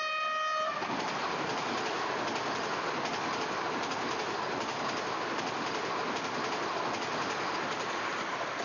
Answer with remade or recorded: recorded